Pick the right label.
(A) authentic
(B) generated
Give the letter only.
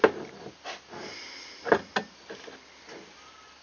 A